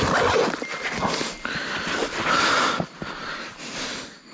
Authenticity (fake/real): real